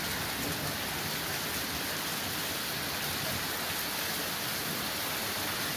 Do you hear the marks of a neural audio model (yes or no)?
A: no